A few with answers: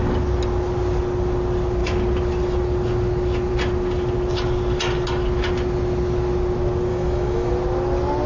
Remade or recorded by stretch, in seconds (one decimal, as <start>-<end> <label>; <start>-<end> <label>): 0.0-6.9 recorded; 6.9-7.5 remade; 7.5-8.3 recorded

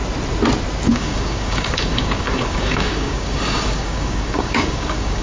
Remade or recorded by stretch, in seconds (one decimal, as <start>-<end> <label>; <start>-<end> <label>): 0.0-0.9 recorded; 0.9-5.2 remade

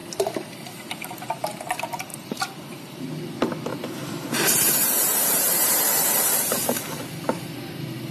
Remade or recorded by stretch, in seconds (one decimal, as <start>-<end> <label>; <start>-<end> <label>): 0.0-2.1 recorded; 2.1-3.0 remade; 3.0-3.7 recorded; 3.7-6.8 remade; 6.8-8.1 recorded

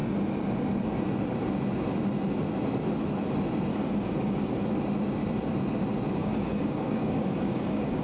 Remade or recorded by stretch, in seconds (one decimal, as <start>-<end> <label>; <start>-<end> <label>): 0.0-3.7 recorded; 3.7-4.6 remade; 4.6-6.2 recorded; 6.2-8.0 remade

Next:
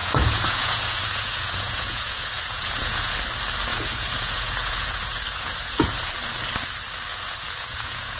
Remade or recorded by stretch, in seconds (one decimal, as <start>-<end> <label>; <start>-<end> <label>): 0.0-3.1 remade; 3.1-3.7 recorded; 3.7-6.1 remade; 6.1-7.1 recorded; 7.1-8.2 remade

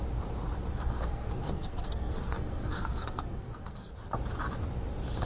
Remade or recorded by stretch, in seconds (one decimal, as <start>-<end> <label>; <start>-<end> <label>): 0.0-0.7 recorded; 0.7-3.9 remade; 3.9-5.3 recorded